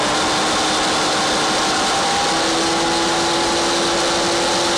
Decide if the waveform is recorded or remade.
recorded